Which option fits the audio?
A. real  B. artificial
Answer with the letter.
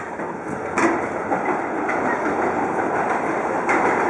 A